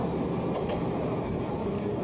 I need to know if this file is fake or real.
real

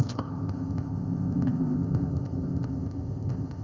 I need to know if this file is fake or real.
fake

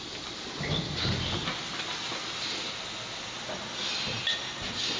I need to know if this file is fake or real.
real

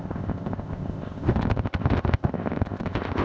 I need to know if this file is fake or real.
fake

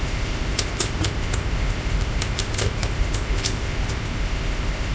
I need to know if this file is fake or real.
fake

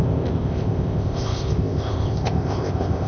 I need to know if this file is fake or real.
fake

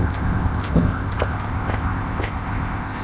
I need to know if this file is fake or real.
fake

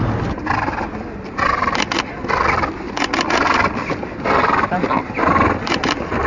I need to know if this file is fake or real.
real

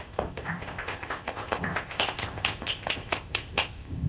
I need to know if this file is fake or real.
fake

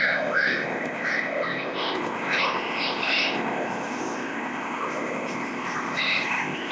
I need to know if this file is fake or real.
fake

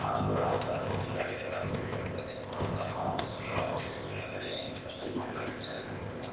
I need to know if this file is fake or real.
fake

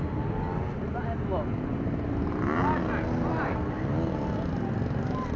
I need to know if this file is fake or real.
real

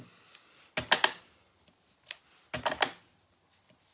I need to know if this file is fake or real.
real